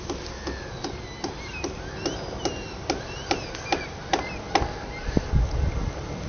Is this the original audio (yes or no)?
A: yes